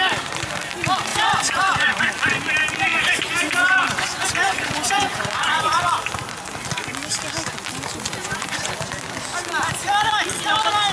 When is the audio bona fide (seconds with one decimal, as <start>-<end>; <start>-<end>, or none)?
0.0-1.1; 2.0-2.9; 5.8-8.2; 8.7-10.9